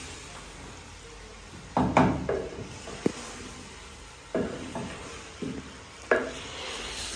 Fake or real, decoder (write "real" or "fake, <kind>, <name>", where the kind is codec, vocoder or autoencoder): real